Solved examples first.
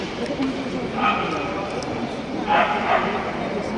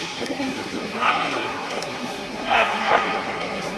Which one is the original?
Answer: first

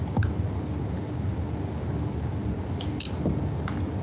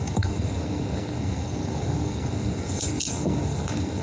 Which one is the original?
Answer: first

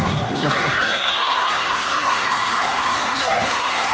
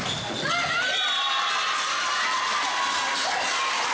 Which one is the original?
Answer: second